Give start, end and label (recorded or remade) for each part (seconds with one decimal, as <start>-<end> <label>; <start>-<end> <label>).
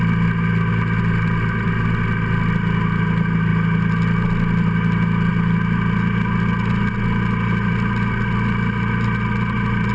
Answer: 0.0-9.9 recorded